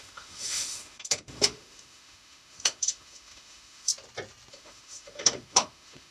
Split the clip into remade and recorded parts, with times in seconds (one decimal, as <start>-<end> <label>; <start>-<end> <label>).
0.0-3.9 remade; 3.9-4.5 recorded; 4.5-6.1 remade